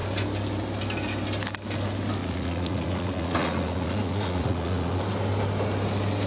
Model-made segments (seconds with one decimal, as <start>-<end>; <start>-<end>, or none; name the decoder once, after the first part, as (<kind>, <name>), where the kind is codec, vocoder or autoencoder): 2.2-5.0 (vocoder, Vocos)